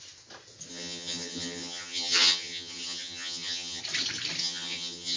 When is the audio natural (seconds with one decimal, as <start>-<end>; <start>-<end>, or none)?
0.0-0.7; 3.8-4.4